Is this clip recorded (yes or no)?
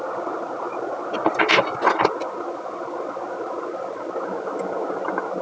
yes